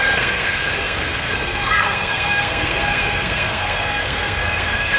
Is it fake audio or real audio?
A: fake